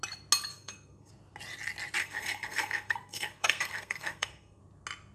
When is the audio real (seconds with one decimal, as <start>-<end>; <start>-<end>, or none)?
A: 0.0-0.5; 1.1-2.0; 4.6-5.1